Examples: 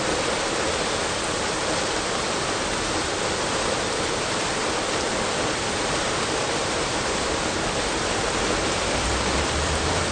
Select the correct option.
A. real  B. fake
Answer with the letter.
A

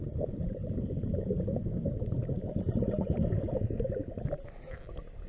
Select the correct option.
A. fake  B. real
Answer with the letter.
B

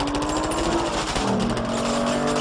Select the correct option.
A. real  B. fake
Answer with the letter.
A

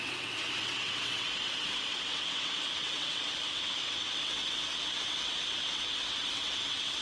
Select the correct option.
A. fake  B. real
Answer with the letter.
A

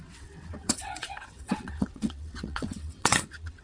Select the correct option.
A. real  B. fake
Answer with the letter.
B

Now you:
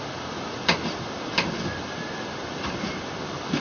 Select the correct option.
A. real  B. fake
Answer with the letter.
A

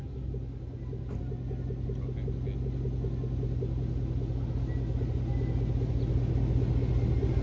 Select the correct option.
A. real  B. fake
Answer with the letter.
A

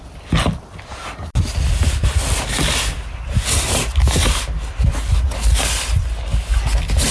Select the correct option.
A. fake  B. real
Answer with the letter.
B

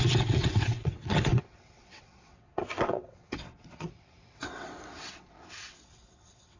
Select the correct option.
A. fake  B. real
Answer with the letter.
A